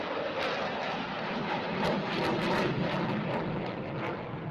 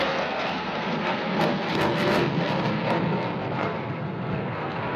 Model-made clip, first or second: second